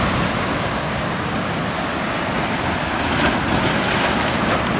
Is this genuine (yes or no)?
yes